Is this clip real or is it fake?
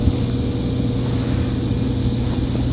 real